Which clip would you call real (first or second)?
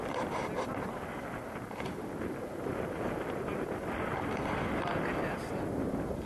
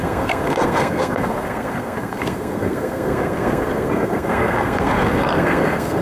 first